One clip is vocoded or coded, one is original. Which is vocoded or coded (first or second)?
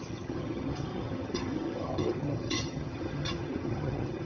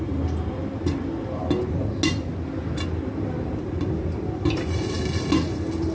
first